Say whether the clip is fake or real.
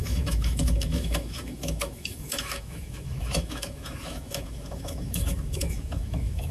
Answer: fake